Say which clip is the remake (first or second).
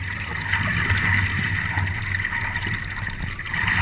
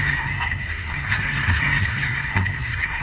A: second